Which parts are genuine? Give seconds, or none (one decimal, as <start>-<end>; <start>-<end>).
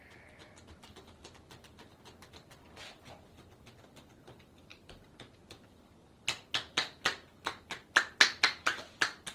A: 0.0-9.3